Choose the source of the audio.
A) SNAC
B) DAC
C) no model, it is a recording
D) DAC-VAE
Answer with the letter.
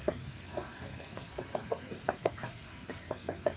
A